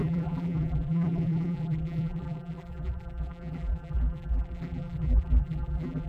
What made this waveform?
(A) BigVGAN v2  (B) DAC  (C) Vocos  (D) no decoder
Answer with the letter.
A